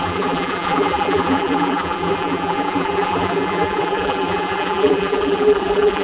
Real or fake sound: fake